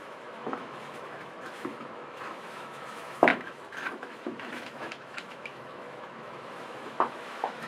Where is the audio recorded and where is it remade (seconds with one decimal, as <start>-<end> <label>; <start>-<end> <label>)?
0.0-7.7 remade